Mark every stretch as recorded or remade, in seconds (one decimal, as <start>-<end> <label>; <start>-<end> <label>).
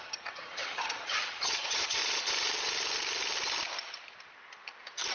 0.0-2.0 remade; 2.0-5.1 recorded